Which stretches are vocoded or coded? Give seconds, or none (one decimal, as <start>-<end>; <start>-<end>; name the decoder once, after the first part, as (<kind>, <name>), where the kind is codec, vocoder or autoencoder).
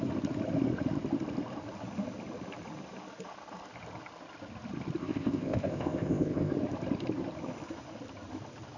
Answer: 5.0-6.5 (codec, ZipCodec)